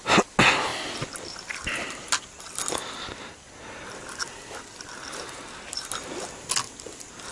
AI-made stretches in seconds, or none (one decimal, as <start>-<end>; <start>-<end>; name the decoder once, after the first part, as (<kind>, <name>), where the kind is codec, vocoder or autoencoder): none